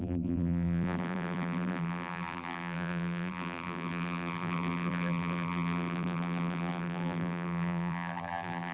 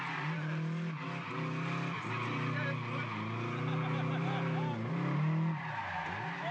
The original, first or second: second